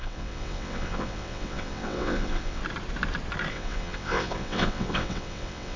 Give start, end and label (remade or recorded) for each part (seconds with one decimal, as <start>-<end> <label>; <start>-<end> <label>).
0.0-2.6 remade; 2.6-3.5 recorded; 3.5-5.8 remade